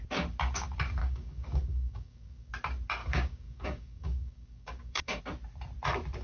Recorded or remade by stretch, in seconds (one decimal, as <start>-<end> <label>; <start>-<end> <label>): 0.0-1.0 recorded; 1.0-2.5 remade; 2.5-3.0 recorded; 3.0-5.2 remade; 5.2-6.2 recorded